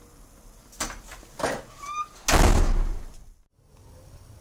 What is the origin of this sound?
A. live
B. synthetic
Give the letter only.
A